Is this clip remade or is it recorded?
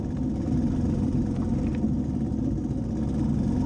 recorded